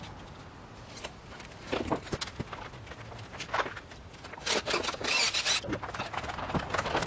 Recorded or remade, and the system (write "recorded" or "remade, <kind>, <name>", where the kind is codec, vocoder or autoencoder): recorded